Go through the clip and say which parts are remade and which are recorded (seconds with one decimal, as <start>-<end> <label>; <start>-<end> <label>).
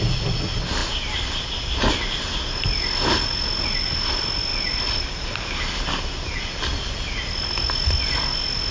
0.0-8.7 recorded